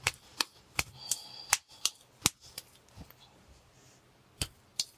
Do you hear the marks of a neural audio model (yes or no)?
no